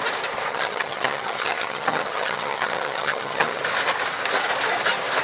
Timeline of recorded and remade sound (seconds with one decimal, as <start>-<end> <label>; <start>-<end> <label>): 0.0-0.5 recorded; 0.5-3.6 remade; 3.6-5.2 recorded